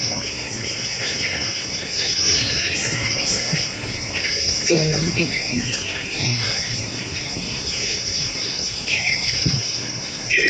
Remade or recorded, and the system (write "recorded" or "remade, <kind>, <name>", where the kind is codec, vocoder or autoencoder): remade, codec, SNAC